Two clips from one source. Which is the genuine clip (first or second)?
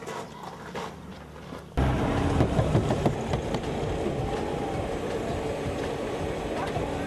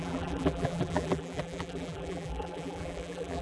first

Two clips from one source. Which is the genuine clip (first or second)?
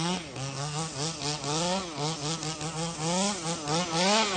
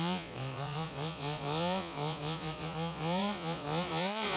first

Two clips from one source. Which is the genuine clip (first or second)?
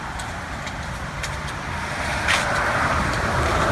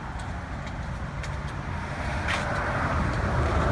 second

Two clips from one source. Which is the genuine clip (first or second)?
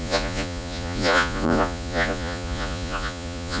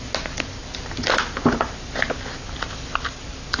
second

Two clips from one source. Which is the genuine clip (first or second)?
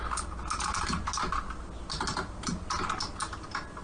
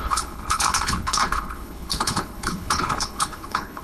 first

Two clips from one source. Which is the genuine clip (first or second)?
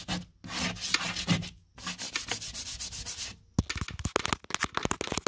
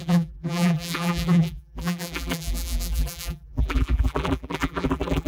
first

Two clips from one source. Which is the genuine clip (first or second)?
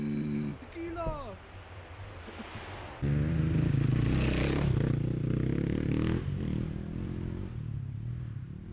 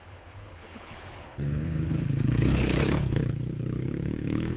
first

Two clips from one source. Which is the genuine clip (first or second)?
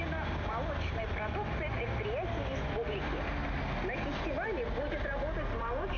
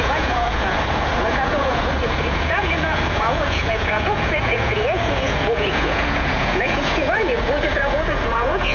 first